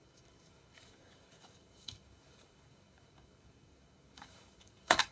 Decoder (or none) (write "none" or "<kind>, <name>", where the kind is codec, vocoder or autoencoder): codec, DAC